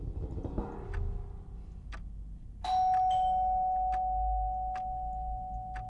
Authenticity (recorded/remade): recorded